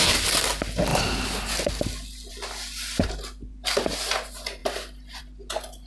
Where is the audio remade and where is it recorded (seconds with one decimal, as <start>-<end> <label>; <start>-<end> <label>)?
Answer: 0.0-5.9 recorded